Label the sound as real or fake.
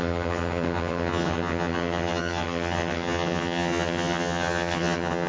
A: fake